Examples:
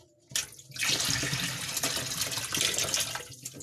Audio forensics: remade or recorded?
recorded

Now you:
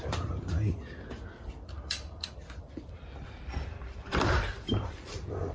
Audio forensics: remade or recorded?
remade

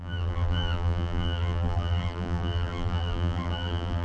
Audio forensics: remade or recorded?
remade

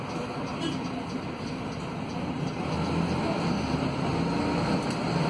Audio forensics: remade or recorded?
recorded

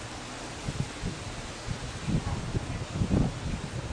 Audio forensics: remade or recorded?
recorded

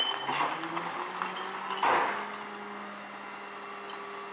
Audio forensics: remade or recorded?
recorded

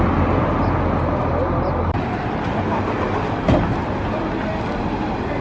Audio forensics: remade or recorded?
recorded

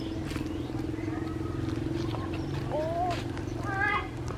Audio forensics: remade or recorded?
recorded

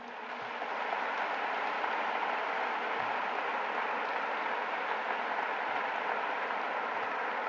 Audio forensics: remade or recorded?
recorded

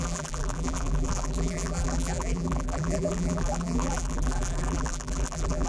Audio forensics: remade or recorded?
remade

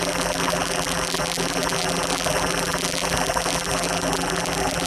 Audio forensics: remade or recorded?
remade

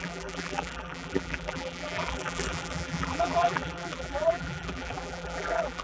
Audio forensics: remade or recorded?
remade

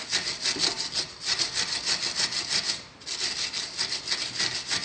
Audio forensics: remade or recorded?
recorded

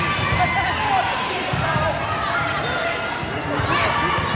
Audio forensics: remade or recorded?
recorded